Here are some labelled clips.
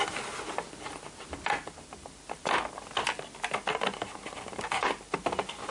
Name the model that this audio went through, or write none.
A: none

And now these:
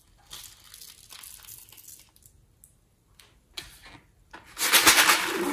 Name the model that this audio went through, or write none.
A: none